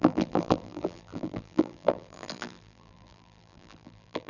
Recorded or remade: remade